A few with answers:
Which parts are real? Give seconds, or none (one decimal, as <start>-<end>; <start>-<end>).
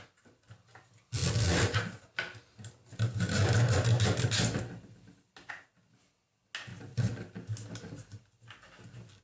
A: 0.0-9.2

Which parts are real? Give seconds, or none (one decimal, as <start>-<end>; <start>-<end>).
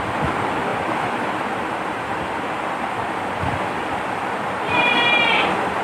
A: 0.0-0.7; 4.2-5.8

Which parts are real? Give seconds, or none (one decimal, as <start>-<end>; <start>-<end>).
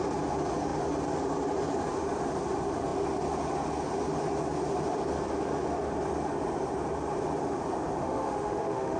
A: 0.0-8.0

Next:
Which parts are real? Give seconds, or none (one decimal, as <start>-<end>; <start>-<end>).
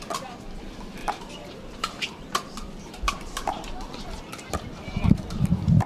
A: 0.0-1.0; 4.5-5.9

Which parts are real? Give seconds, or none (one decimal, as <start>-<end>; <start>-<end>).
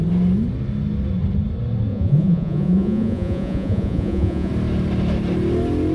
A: 0.0-1.9; 4.5-5.9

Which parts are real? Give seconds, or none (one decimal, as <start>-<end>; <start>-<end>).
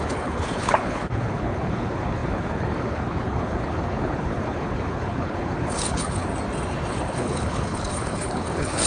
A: 6.3-6.9